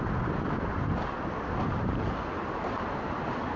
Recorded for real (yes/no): yes